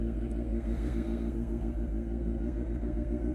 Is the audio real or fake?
fake